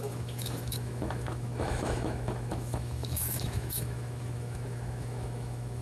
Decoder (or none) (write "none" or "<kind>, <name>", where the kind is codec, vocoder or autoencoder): autoencoder, DAC-VAE